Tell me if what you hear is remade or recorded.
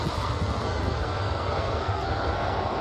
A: remade